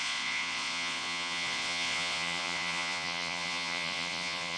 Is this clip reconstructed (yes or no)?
yes